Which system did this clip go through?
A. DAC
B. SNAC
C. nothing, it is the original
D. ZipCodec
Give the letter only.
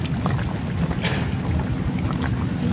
C